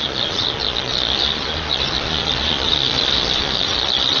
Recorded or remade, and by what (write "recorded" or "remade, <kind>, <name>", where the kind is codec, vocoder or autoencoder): remade, vocoder, Vocos